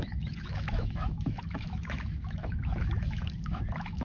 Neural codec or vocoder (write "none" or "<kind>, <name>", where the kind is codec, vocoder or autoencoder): autoencoder, DAC-VAE